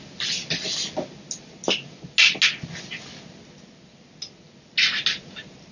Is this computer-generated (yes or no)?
no